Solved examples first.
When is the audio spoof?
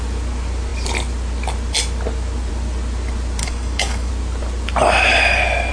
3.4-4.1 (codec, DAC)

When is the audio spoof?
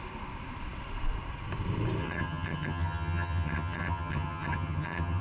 2.0-5.2 (vocoder, HiFi-GAN)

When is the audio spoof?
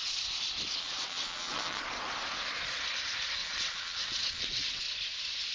0.8-1.8 (vocoder, WaveNeXt); 3.4-4.8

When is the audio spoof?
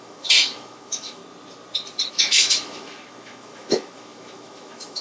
0.0-1.2 (autoencoder, DAC-VAE); 2.1-5.0